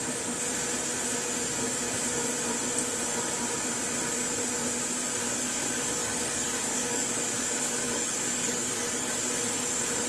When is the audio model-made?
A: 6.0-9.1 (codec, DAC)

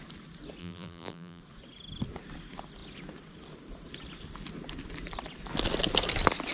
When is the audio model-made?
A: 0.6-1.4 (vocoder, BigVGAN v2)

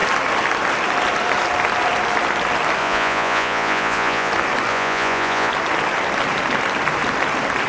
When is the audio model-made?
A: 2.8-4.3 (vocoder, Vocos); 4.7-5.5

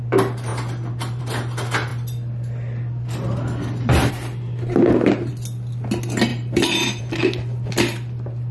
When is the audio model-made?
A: 1.9-4.1 (vocoder, BigVGAN v2); 6.3-7.0

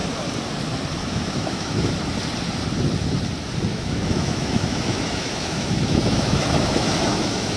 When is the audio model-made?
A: 1.0-1.9 (autoencoder, DAC-VAE); 3.7-7.6

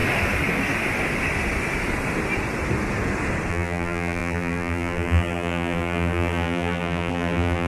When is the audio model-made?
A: 3.5-7.7 (vocoder, BigVGAN v2)

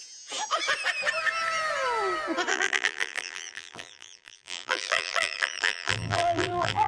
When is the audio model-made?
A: 2.5-6.9 (vocoder, BigVGAN v2)

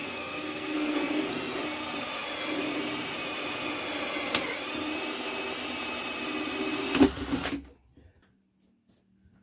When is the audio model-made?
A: 0.0-1.2 (codec, SNAC)